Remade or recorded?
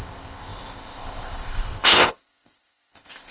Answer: remade